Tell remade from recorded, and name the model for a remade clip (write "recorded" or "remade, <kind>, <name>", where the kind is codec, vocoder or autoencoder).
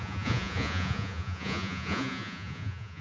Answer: remade, vocoder, Vocos